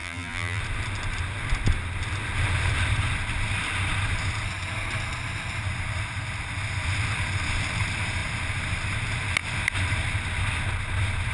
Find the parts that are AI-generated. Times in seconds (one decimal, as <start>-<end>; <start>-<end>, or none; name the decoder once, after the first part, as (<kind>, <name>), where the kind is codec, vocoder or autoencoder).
0.0-0.6 (vocoder, BigVGAN v2)